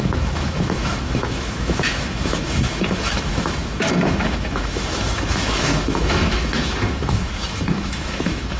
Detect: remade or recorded remade